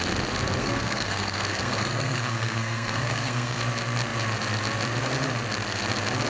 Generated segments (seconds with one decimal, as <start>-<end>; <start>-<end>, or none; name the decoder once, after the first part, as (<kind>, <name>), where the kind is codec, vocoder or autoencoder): 0.6-3.6 (codec, SNAC)